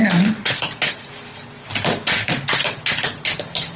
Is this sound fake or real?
real